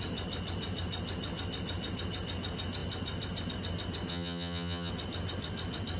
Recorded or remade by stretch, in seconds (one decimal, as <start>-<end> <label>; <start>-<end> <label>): 0.0-4.1 recorded; 4.1-4.9 remade; 4.9-6.0 recorded